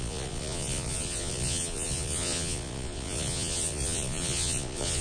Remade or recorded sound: remade